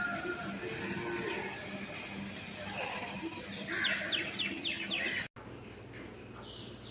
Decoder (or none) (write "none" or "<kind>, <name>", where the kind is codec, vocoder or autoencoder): none